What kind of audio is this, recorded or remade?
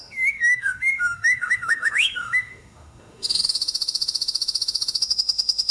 remade